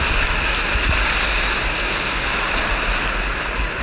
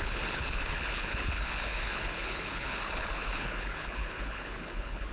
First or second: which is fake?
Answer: second